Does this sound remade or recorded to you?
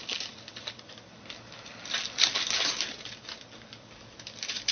recorded